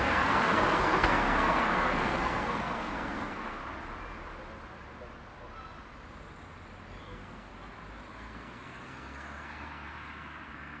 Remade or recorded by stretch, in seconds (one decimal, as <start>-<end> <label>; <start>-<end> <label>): 0.0-3.6 remade; 3.6-7.0 recorded; 7.0-7.5 remade; 7.5-8.1 recorded; 8.1-10.8 remade